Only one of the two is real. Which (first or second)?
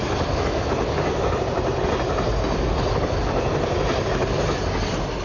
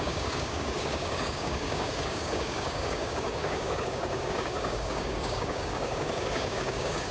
first